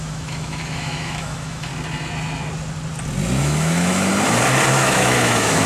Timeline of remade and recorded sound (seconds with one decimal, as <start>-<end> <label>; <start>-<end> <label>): 0.0-1.7 remade; 1.7-3.4 recorded; 3.4-4.1 remade; 4.1-4.7 recorded; 4.7-5.7 remade